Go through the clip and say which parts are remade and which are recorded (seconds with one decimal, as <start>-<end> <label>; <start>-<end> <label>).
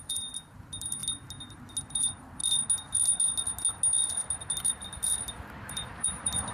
0.0-1.0 remade; 1.0-1.8 recorded; 1.8-2.4 remade; 2.4-5.3 recorded; 5.3-6.5 remade